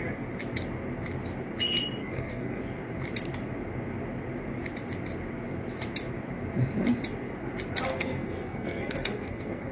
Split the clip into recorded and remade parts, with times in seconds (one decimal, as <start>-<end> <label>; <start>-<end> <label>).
0.0-2.0 recorded; 2.0-2.6 remade; 2.6-7.9 recorded; 7.9-9.7 remade